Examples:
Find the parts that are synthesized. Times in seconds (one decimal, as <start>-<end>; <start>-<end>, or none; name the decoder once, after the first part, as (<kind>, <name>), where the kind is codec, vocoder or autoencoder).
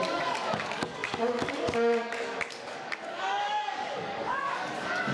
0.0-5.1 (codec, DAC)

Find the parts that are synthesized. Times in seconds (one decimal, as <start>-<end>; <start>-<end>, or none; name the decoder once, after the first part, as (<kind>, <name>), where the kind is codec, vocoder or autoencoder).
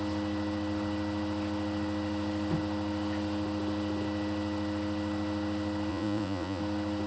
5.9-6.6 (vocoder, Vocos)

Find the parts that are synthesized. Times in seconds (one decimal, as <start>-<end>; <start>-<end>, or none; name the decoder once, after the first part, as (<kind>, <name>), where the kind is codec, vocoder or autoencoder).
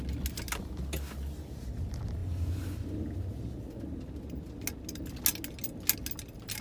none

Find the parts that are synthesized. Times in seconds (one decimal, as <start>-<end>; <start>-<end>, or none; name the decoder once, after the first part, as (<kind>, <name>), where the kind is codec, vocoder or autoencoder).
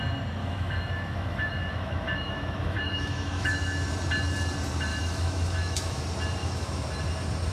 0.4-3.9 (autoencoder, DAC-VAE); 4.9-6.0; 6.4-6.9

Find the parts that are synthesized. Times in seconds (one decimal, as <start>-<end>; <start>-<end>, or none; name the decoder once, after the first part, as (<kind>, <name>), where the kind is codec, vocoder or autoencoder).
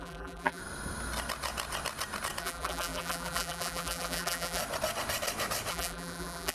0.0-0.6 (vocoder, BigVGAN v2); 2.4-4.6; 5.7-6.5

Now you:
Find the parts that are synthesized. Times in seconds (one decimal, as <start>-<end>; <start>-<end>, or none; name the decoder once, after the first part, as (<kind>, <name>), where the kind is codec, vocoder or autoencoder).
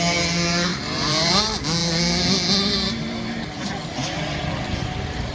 0.7-1.3 (vocoder, BigVGAN v2)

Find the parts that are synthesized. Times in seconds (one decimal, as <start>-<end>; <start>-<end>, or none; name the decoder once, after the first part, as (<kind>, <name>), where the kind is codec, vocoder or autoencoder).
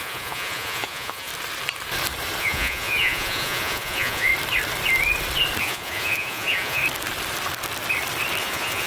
0.0-1.3 (vocoder, Vocos); 2.4-4.3; 5.6-6.8; 8.4-8.9